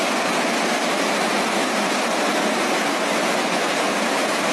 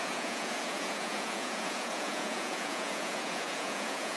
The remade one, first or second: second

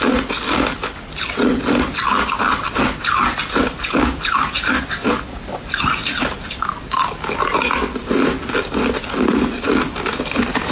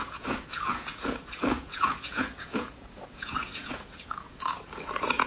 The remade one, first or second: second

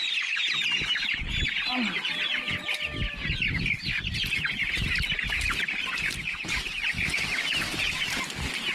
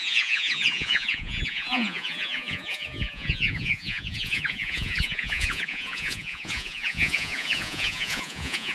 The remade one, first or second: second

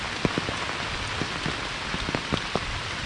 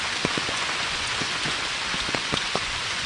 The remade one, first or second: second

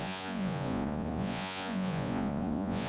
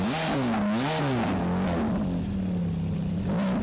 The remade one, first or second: first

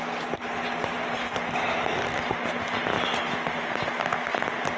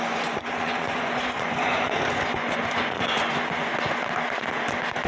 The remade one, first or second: second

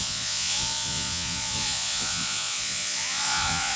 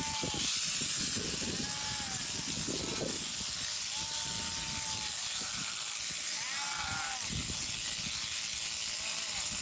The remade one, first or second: first